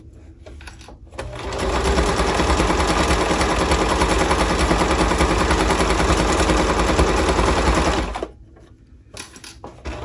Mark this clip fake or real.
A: real